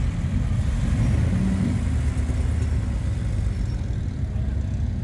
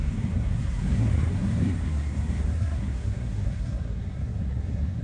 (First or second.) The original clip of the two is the first